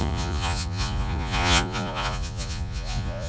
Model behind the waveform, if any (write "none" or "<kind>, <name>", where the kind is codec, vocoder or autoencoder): vocoder, Vocos